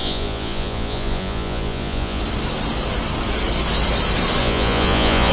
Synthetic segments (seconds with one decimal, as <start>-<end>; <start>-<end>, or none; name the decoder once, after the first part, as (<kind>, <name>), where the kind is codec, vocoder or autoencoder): 0.0-2.2 (vocoder, Vocos); 4.4-5.3

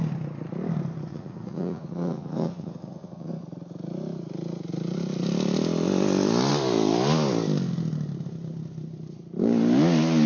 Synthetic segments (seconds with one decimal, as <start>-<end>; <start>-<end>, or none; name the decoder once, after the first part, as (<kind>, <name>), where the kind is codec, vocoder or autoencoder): 1.1-3.3 (vocoder, Vocos)

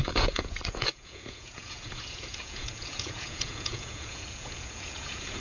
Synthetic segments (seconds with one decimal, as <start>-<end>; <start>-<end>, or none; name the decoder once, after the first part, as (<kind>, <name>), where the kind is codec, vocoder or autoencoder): 0.0-5.4 (vocoder, Vocos)

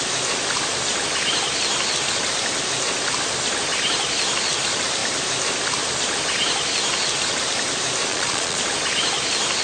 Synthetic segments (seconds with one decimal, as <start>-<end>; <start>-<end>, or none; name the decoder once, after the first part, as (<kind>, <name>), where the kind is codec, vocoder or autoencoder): 8.1-8.6 (vocoder, Vocos)